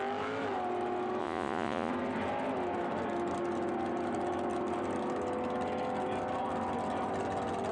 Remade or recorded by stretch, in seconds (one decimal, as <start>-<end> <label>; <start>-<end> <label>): 0.0-1.2 recorded; 1.2-1.9 remade; 1.9-7.7 recorded